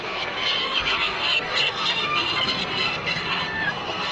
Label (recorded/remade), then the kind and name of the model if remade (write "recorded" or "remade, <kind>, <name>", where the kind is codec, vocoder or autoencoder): remade, codec, SNAC